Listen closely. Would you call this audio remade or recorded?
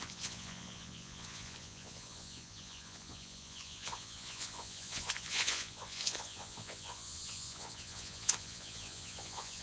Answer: remade